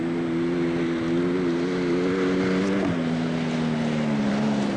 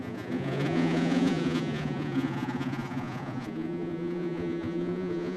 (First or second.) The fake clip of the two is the second